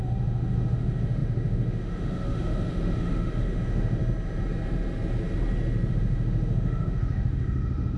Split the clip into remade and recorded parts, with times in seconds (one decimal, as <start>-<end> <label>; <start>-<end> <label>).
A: 0.0-4.0 remade; 4.0-5.9 recorded; 5.9-8.0 remade